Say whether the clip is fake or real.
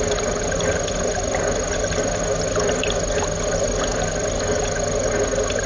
real